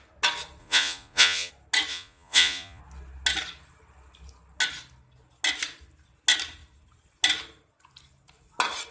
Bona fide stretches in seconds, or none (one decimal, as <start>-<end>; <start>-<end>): 0.0-0.6; 1.5-1.9; 2.8-8.9